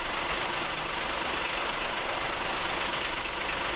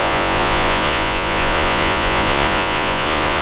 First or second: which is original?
first